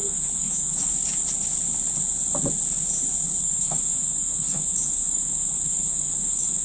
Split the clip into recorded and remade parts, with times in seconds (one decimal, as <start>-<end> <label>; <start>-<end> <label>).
0.0-0.9 remade; 0.9-3.4 recorded; 3.4-6.6 remade